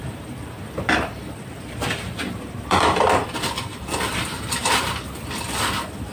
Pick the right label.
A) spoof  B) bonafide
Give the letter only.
A